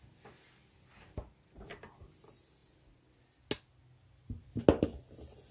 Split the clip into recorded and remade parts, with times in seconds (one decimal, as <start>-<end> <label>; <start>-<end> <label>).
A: 0.0-5.5 recorded